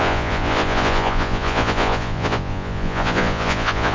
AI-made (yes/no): yes